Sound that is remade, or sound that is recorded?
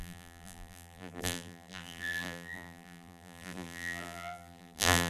remade